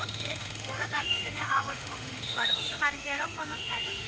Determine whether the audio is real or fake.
fake